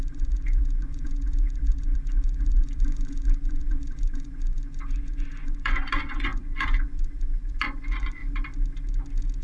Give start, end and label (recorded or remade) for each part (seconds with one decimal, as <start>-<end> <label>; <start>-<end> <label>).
0.0-8.2 remade; 8.2-9.4 recorded